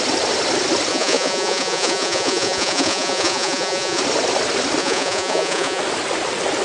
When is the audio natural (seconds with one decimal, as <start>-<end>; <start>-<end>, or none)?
0.0-0.9; 4.0-4.8; 5.8-6.6

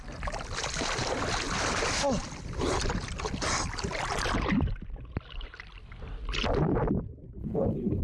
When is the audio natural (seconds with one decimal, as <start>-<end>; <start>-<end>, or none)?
0.0-7.4

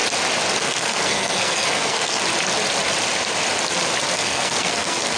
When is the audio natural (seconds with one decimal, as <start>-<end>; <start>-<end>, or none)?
0.0-0.6; 2.2-4.0

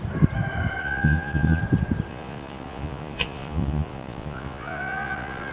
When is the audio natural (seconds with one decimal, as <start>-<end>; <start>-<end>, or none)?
0.0-0.8; 1.6-2.1

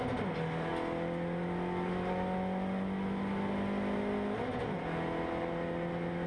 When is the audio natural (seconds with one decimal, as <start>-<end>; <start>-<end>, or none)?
0.0-6.3

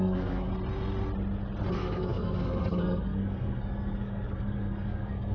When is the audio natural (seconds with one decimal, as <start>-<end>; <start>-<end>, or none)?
0.5-1.7

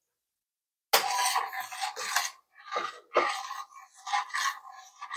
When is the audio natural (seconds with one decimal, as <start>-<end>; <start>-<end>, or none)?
0.0-5.2